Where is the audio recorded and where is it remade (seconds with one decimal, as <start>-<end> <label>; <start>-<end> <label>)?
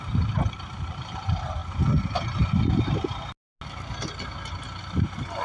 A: 0.0-1.6 remade; 1.6-4.8 recorded; 4.8-5.4 remade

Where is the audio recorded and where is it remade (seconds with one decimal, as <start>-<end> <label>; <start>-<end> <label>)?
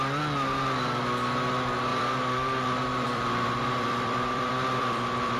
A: 0.0-1.9 recorded; 1.9-5.4 remade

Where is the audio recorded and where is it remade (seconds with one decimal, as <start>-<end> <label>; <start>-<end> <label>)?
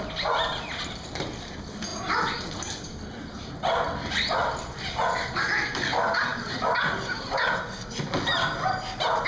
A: 0.0-9.3 recorded